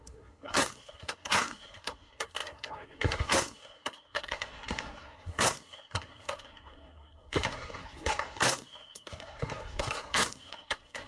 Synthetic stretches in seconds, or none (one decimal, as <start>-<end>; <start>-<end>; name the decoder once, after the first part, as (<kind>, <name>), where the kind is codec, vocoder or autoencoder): 0.0-11.1 (codec, SNAC)